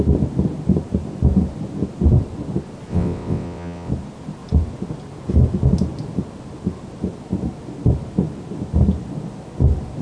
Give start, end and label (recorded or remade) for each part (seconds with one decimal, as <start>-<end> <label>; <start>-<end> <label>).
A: 0.0-2.9 recorded; 2.9-3.9 remade; 3.9-10.0 recorded

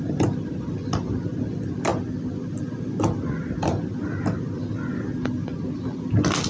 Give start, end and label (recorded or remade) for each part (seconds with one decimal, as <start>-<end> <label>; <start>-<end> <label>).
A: 0.0-6.5 recorded